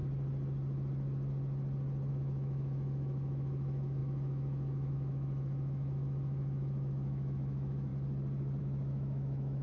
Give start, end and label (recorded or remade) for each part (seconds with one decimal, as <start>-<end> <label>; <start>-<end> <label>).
0.0-2.1 recorded; 2.1-7.9 remade; 7.9-8.6 recorded; 8.6-9.6 remade